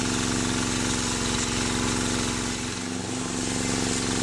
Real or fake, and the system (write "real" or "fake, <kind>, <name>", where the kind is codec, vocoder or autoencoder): real